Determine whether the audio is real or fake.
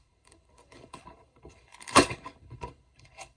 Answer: fake